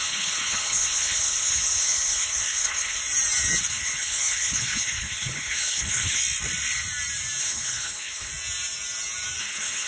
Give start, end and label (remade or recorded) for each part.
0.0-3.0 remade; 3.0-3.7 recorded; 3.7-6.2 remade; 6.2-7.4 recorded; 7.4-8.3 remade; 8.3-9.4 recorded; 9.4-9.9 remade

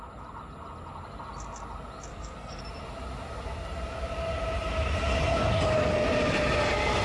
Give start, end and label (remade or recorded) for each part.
0.0-2.1 recorded; 2.1-2.6 remade; 2.6-7.0 recorded

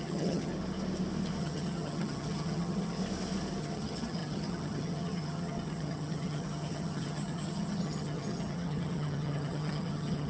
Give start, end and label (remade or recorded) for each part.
0.0-0.5 remade; 0.5-1.4 recorded; 1.4-3.0 remade; 3.0-3.6 recorded; 3.6-10.3 remade

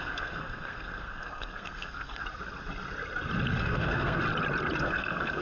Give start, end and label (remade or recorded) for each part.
0.0-2.2 remade; 2.2-3.6 recorded; 3.6-4.2 remade; 4.2-4.8 recorded; 4.8-5.4 remade

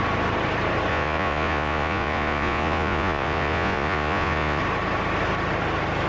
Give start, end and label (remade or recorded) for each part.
0.0-0.9 recorded; 0.9-4.6 remade; 4.6-6.1 recorded

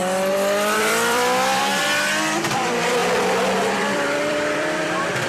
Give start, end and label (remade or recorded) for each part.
0.0-3.0 remade; 3.0-3.8 recorded; 3.8-5.3 remade

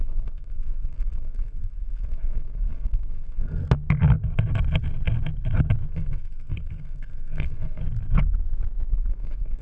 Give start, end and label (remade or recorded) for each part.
0.0-3.6 remade; 3.6-5.9 recorded; 5.9-7.8 remade; 7.8-8.9 recorded; 8.9-9.6 remade

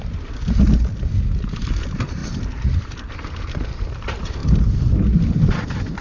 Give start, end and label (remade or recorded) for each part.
0.0-6.0 recorded